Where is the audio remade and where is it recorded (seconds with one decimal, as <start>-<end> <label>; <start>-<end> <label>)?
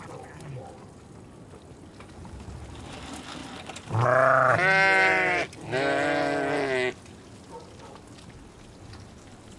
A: 0.0-9.6 recorded